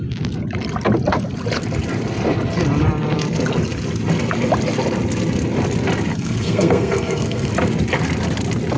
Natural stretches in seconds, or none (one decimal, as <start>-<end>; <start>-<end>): 0.0-6.1; 7.5-8.8